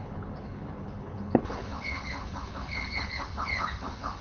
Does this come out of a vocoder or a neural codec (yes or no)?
yes